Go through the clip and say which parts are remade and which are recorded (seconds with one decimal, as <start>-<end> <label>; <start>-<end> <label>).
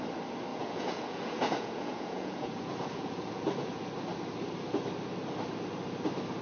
0.0-0.5 recorded; 0.5-3.9 remade; 3.9-6.4 recorded